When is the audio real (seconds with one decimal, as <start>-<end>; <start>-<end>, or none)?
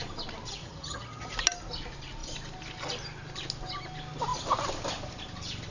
0.0-0.6; 1.3-5.7